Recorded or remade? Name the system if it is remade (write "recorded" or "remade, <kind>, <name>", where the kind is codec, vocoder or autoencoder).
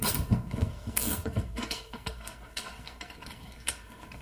remade, codec, SNAC